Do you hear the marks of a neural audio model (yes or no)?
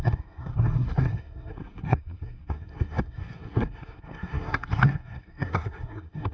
yes